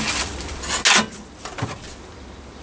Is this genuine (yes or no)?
yes